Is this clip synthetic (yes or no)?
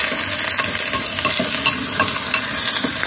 no